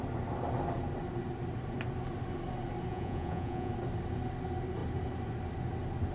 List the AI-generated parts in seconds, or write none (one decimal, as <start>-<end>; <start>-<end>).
2.9-3.7